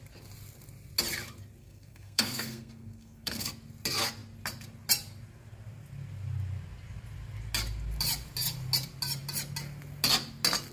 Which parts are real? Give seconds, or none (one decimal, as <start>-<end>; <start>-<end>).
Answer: 0.0-1.6; 3.5-10.7